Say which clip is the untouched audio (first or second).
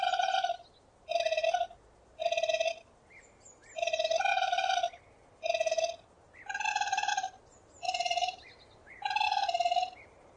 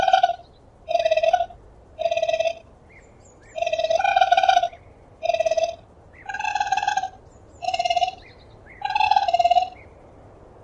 first